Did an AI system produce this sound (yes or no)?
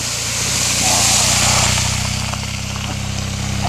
no